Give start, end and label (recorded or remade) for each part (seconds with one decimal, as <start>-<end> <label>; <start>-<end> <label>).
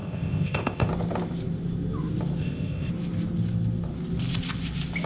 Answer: 0.0-0.9 remade; 0.9-2.4 recorded; 2.4-2.9 remade; 2.9-5.1 recorded